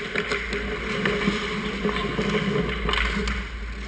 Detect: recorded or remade recorded